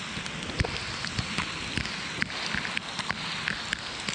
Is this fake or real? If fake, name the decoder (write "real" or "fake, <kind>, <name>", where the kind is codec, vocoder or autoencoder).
real